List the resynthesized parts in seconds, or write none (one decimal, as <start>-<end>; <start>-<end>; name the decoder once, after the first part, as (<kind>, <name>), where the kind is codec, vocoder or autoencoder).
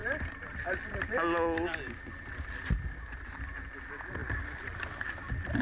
none